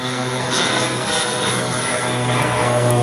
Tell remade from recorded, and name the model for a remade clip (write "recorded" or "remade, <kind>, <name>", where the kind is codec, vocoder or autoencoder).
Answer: remade, codec, SNAC